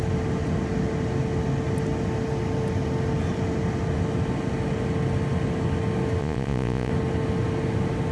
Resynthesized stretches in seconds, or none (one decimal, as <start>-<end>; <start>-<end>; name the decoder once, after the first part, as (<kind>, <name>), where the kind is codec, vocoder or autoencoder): 6.2-6.9 (vocoder, Vocos)